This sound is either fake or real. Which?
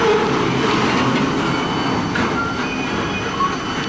real